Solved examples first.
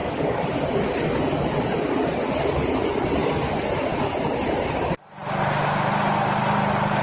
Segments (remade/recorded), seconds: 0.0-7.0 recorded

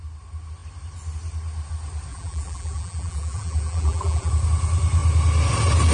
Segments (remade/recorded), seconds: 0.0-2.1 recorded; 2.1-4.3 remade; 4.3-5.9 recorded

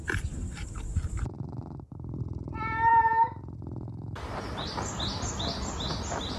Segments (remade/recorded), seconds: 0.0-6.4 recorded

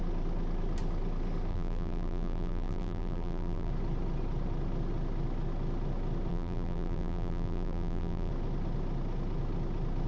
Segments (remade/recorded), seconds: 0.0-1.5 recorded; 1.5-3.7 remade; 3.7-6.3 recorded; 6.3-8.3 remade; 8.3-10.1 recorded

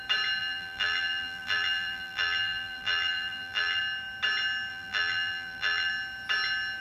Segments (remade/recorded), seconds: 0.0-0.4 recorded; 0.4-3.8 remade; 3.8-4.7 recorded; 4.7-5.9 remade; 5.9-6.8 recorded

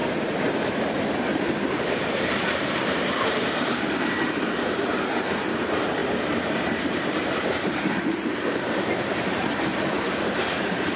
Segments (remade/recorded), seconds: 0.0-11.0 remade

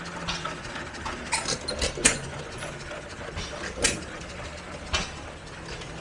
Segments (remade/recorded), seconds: 0.0-2.0 recorded; 2.0-2.7 remade; 2.7-6.0 recorded

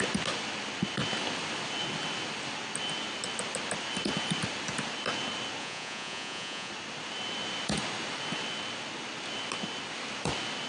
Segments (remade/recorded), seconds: 0.0-5.6 recorded; 5.6-6.7 remade; 6.7-10.7 recorded